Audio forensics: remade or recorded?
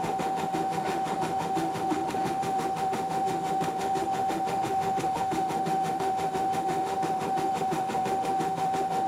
remade